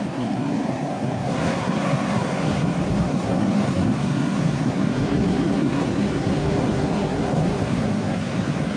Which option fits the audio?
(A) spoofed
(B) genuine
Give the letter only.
A